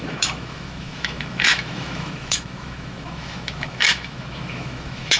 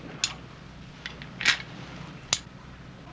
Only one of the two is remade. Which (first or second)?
first